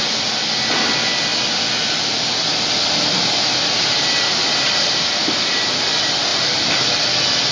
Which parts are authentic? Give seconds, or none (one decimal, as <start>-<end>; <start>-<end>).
0.0-7.5

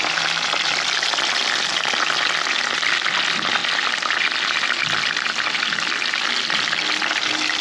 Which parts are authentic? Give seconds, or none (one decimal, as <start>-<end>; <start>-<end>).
0.0-7.6

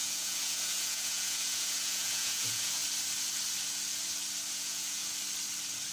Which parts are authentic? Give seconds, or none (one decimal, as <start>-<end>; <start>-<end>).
2.8-4.5; 5.0-5.9

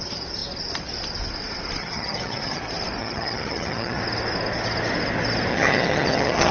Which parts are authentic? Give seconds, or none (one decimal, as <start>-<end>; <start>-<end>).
0.0-1.8; 2.6-3.0; 4.0-5.5

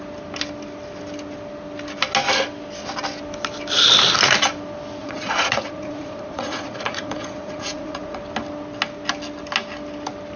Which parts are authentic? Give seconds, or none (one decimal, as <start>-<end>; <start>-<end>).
0.0-5.0; 8.2-10.4

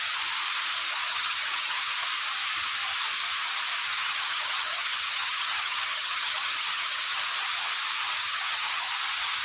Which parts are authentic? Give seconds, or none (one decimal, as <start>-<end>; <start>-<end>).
0.0-1.1; 1.9-3.9; 7.2-8.2; 8.9-9.4